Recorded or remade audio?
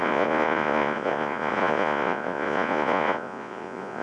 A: remade